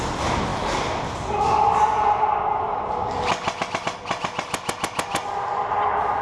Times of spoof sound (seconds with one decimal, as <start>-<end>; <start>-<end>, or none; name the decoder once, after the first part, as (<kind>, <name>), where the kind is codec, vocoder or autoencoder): none